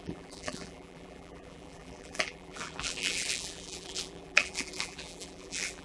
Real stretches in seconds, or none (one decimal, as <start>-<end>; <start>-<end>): none